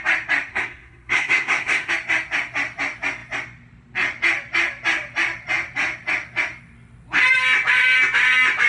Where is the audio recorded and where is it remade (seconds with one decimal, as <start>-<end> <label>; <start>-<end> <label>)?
0.0-0.5 recorded; 0.5-1.9 remade; 1.9-8.7 recorded